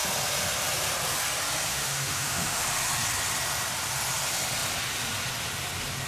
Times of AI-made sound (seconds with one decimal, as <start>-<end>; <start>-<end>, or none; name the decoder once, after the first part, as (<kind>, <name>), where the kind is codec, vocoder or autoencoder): 1.7-2.6 (autoencoder, DAC-VAE)

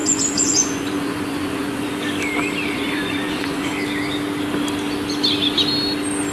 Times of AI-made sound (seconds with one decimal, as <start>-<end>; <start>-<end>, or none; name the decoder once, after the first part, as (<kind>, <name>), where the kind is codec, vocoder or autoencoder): 0.0-1.9 (vocoder, Vocos); 2.7-3.7